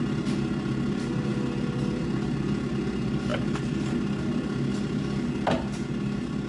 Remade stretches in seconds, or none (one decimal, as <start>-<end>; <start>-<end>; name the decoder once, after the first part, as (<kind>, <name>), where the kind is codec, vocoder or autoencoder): none